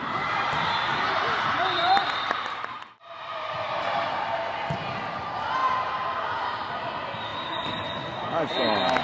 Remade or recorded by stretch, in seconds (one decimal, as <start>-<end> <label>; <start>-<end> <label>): 0.0-0.9 recorded; 0.9-4.2 remade; 4.2-9.0 recorded